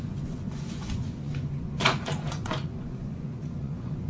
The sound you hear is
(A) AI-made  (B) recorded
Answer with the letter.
A